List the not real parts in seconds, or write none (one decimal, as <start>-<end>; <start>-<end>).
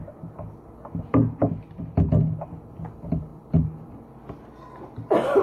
none